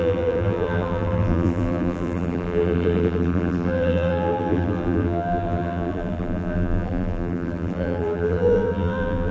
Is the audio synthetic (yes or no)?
yes